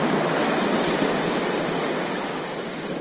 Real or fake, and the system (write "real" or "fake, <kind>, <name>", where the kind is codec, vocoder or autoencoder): real